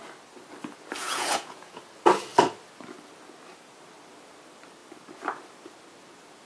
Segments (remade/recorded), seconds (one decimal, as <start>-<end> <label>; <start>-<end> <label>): 0.0-1.0 recorded; 1.0-1.8 remade; 1.8-6.5 recorded